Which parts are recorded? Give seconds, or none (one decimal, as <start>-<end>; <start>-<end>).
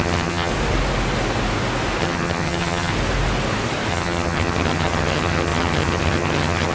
0.5-2.0; 2.9-3.9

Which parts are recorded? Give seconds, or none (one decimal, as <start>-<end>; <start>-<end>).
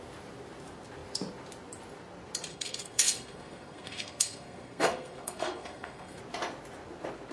0.0-2.5; 6.2-7.3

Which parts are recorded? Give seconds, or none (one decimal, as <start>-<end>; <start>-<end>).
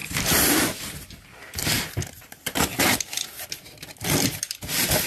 0.6-1.6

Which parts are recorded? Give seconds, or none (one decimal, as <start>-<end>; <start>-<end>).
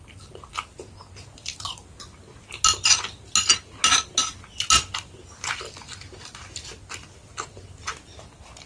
0.0-8.7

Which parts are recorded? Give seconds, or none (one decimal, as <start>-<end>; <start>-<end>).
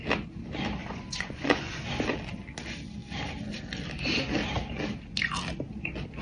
0.0-0.8; 1.8-6.2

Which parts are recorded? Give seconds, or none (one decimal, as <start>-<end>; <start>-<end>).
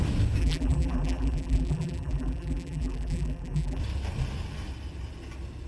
0.0-0.4; 3.8-5.7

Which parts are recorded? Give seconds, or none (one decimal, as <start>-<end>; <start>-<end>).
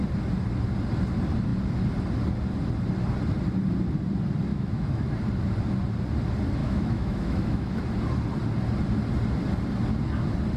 0.0-4.5; 5.1-6.6; 7.8-10.6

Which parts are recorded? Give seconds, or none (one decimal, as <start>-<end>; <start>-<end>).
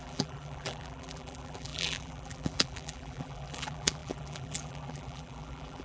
none